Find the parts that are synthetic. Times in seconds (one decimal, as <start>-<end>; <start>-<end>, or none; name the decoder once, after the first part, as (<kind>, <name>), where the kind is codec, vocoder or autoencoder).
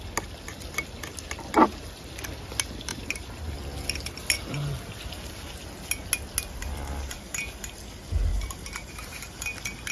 2.9-3.5 (vocoder, BigVGAN v2); 8.3-9.4